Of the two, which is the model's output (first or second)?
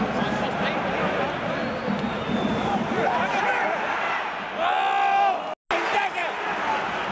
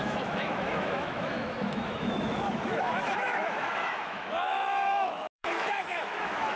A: second